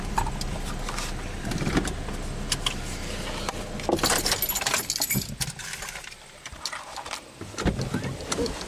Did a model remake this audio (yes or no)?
no